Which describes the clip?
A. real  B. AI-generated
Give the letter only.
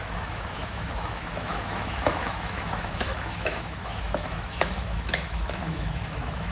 B